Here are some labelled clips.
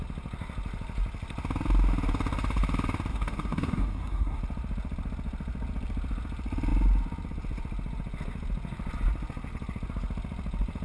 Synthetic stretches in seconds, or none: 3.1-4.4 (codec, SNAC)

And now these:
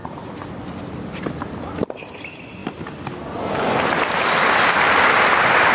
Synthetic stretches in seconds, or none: none